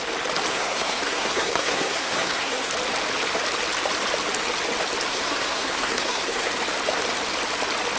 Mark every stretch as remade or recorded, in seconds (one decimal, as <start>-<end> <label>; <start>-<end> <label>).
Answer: 0.0-0.5 recorded; 0.5-2.7 remade; 2.7-5.1 recorded; 5.1-6.5 remade; 6.5-8.0 recorded